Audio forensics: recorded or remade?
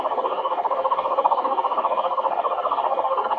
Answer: remade